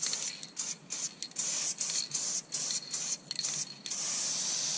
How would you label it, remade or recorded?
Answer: recorded